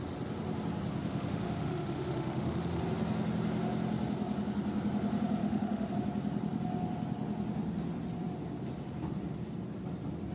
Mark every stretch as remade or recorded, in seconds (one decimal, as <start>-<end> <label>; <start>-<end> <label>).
0.0-1.1 recorded; 1.1-2.8 remade; 2.8-5.4 recorded; 5.4-5.9 remade; 5.9-10.3 recorded